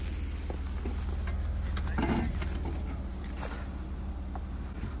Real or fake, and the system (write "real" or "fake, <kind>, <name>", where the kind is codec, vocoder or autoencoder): real